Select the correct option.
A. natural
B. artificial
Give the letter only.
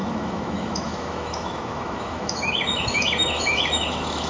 B